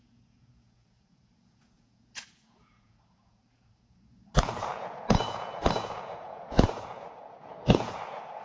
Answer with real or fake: fake